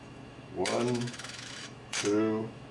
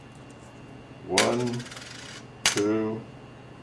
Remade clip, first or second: first